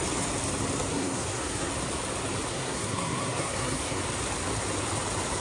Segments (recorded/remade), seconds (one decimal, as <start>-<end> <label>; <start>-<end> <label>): 0.0-0.9 recorded; 0.9-1.7 remade; 1.7-2.5 recorded; 2.5-4.0 remade; 4.0-5.4 recorded